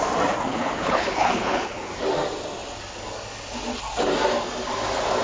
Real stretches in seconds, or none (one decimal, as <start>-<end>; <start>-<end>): 0.0-0.5; 1.9-5.2